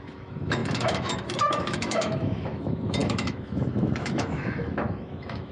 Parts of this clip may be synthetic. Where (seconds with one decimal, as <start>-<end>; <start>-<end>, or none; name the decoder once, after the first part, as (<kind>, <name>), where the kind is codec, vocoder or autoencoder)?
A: 0.0-5.5 (autoencoder, DAC-VAE)